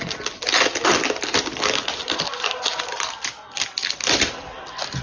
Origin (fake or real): real